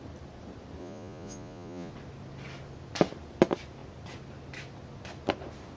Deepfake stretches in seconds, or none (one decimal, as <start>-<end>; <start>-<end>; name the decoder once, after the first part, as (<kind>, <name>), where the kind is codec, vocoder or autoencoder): 0.8-1.9 (vocoder, Vocos)